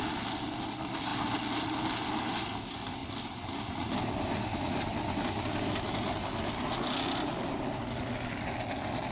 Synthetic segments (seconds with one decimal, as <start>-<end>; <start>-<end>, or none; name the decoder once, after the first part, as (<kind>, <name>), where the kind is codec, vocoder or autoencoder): none